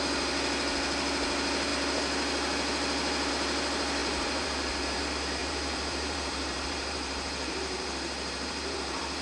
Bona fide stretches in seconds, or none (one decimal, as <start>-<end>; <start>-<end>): 0.0-4.0; 5.0-5.4